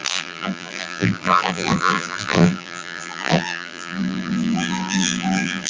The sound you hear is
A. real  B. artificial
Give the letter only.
B